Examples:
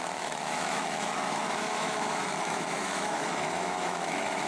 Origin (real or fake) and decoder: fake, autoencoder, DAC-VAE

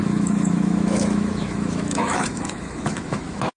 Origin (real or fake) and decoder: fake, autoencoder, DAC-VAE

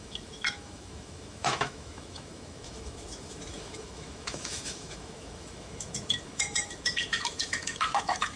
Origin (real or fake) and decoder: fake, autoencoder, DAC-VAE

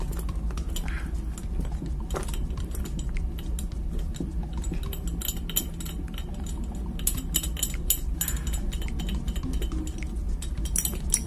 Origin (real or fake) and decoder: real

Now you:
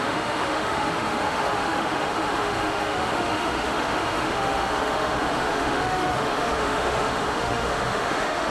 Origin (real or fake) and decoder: fake, autoencoder, DAC-VAE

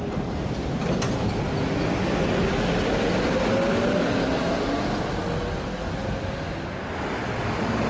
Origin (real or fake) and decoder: real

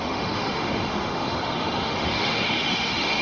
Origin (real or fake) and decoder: fake, autoencoder, DAC-VAE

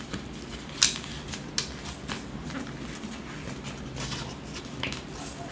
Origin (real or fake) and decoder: real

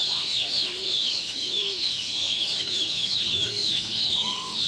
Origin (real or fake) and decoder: fake, autoencoder, DAC-VAE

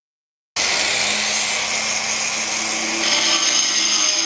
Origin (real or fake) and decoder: real